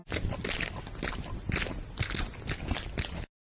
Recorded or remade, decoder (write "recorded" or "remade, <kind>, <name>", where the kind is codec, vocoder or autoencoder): recorded